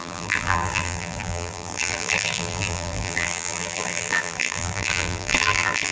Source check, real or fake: fake